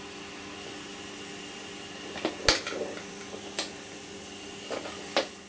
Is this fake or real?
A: real